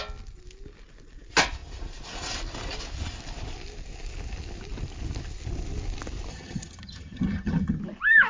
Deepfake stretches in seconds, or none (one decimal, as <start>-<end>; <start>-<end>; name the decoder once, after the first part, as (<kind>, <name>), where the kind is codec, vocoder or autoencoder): 6.3-7.8 (vocoder, HiFi-GAN)